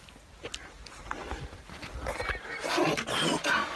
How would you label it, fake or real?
real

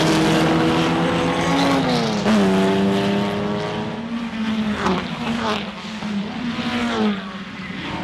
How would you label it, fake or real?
real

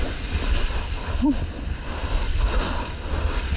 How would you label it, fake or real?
real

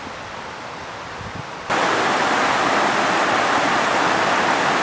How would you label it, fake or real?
real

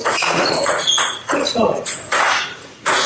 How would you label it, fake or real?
fake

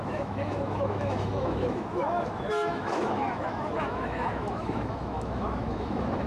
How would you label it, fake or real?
fake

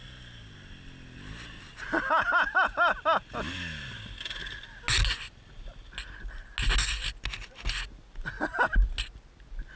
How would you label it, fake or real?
real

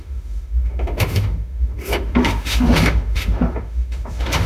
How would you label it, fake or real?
fake